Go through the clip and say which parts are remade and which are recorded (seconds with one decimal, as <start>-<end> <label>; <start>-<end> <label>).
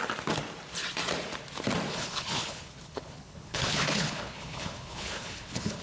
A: 0.0-1.9 recorded; 1.9-5.8 remade